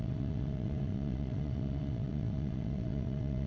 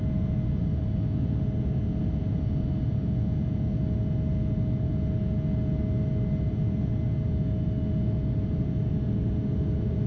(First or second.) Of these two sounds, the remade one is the first